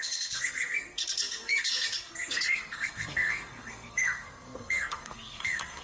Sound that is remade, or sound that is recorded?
remade